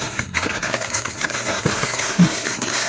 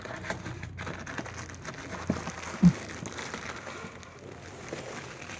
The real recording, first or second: second